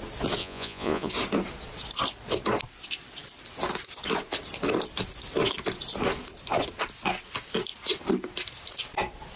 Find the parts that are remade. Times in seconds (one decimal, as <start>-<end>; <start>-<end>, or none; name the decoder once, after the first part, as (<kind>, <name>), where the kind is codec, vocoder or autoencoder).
0.4-1.1 (vocoder, Vocos)